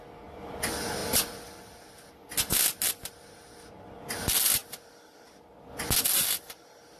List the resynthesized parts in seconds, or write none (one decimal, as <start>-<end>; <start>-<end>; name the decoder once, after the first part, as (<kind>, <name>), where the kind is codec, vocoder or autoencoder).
none